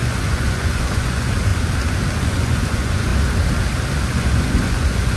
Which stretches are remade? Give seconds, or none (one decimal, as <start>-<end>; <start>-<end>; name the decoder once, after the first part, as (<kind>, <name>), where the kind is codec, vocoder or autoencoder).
0.0-1.5 (vocoder, Vocos); 2.2-3.1; 4.1-5.2